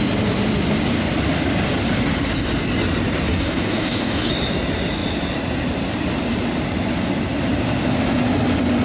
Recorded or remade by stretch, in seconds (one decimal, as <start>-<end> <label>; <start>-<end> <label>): 0.0-3.3 recorded; 3.3-4.3 remade; 4.3-8.8 recorded